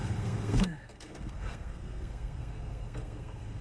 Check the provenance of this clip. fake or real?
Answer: fake